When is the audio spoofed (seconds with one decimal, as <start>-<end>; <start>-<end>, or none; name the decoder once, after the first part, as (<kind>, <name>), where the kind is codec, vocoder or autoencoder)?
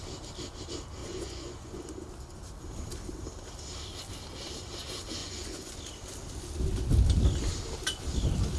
1.0-1.8 (vocoder, Vocos); 5.2-5.8